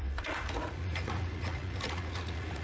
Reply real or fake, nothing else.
fake